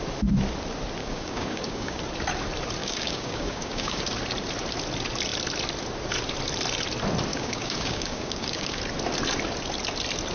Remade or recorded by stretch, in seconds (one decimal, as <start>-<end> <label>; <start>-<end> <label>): 0.0-1.0 recorded; 1.0-2.0 remade; 2.0-2.8 recorded; 2.8-4.0 remade; 4.0-7.3 recorded; 7.3-8.8 remade; 8.8-10.3 recorded